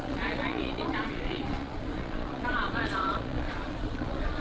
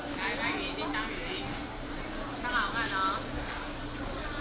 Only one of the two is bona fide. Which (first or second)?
second